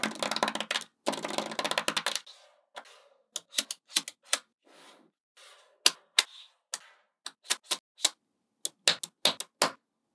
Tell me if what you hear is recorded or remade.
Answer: recorded